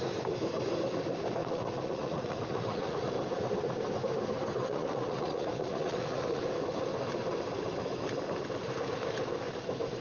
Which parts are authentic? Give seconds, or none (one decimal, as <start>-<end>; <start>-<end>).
0.0-1.4; 3.1-4.6; 6.4-10.0